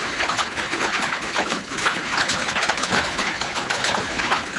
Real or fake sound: fake